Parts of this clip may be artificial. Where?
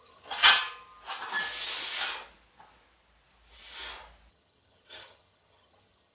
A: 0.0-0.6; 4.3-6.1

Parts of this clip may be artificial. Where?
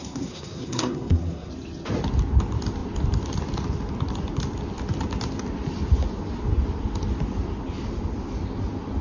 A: 0.0-1.5